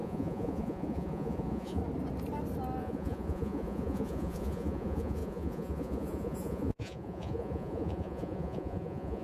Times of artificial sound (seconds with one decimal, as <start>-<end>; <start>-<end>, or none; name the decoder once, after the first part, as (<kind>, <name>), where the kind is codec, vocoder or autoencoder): 0.0-1.8 (vocoder, Vocos); 2.8-9.2

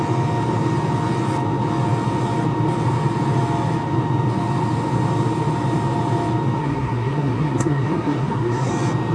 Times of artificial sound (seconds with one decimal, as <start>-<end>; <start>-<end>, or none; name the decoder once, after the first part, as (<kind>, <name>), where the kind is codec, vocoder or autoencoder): 6.6-8.7 (codec, SNAC)

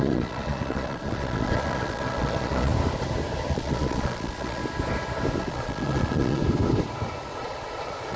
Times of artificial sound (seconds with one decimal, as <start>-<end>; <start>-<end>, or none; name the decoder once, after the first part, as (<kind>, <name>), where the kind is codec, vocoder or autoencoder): 0.0-2.7 (vocoder, Vocos); 3.5-4.6; 5.4-6.4; 7.3-8.2

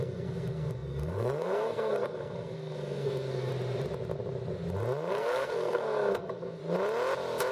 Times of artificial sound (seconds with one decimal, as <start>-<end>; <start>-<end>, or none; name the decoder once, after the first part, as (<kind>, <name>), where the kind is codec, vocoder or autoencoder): 0.0-3.5 (codec, SNAC); 5.1-6.6

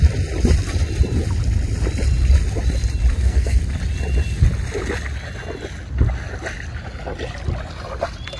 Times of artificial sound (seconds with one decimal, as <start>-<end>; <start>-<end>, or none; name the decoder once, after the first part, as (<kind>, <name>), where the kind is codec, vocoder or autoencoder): 3.1-3.6 (codec, SNAC)